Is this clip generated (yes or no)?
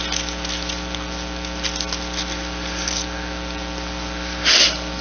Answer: no